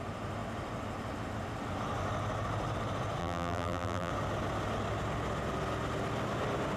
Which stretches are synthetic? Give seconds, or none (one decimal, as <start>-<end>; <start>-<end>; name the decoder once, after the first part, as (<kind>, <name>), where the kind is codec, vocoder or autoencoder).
3.2-4.1 (vocoder, BigVGAN v2)